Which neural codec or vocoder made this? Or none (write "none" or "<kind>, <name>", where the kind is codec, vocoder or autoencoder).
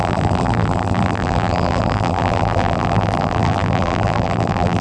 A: vocoder, BigVGAN v2